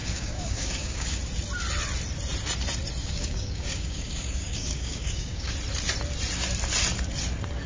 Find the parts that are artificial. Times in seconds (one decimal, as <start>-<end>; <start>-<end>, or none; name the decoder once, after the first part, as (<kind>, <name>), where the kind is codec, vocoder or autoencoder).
0.0-1.2 (codec, DAC); 3.0-5.5